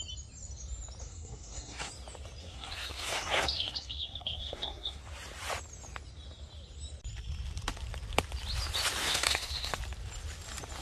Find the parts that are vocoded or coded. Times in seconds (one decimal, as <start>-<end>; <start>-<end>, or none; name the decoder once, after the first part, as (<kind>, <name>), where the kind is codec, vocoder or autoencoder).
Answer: 1.0-1.9 (codec, SNAC); 2.4-5.0; 9.0-9.8